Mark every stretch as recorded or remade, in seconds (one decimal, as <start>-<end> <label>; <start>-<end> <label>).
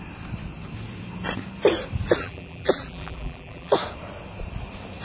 0.0-2.2 recorded; 2.2-3.7 remade; 3.7-5.0 recorded